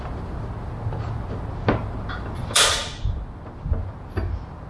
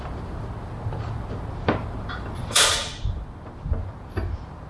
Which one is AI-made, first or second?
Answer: second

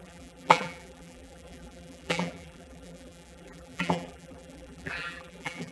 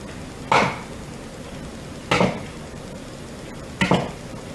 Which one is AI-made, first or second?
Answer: first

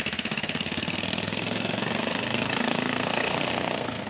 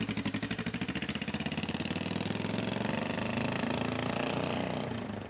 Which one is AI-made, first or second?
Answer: first